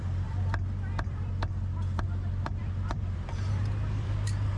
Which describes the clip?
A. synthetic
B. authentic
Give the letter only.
A